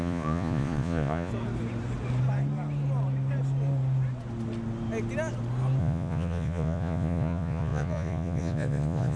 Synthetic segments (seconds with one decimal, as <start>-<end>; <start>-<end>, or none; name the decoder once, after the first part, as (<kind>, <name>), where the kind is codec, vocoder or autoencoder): 0.0-1.3 (vocoder, Vocos); 5.8-9.2